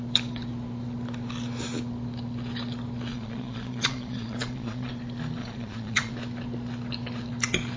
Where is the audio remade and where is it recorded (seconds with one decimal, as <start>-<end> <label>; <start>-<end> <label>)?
0.0-3.1 recorded; 3.1-4.9 remade; 4.9-5.4 recorded; 5.4-6.1 remade; 6.1-7.8 recorded